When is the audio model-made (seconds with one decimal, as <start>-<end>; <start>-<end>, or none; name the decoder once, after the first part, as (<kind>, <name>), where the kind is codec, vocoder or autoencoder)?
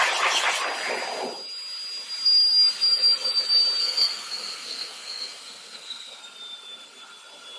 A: 3.8-6.2 (codec, SNAC)